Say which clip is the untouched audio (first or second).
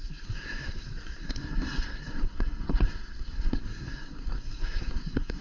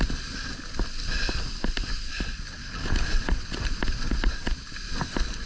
second